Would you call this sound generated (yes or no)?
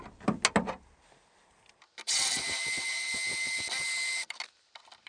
no